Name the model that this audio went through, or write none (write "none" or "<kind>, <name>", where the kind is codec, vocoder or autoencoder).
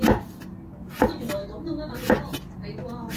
none